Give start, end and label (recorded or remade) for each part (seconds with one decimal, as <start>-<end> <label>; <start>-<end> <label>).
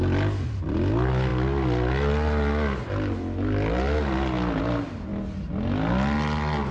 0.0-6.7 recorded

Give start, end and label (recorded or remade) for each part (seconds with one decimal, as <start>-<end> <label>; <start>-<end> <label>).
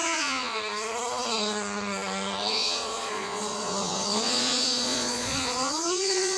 0.0-0.6 remade; 0.6-2.5 recorded; 2.5-6.4 remade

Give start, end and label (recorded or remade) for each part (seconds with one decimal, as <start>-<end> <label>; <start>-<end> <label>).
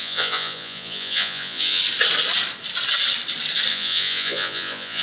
0.0-1.8 remade; 1.8-3.7 recorded; 3.7-5.0 remade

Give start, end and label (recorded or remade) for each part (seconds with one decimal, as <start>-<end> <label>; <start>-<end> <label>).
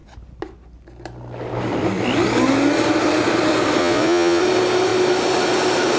0.0-3.8 recorded; 3.8-4.4 remade; 4.4-6.0 recorded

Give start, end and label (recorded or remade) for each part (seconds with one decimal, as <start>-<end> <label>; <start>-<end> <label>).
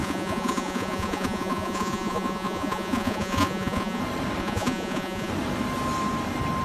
0.0-4.0 remade; 4.0-4.4 recorded; 4.4-5.3 remade; 5.3-6.6 recorded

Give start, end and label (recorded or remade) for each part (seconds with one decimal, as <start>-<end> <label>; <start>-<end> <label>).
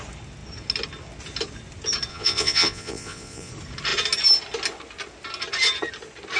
0.0-2.1 recorded; 2.1-3.5 remade; 3.5-6.4 recorded